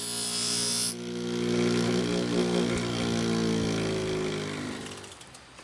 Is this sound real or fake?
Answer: real